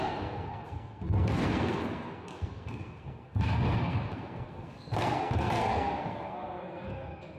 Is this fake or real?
fake